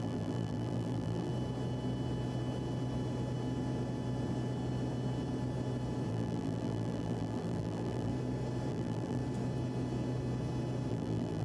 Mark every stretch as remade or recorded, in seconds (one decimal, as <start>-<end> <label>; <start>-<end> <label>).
0.0-1.3 remade; 1.3-6.1 recorded; 6.1-8.1 remade; 8.1-8.7 recorded; 8.7-9.2 remade; 9.2-10.9 recorded; 10.9-11.4 remade